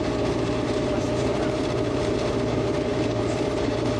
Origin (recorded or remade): remade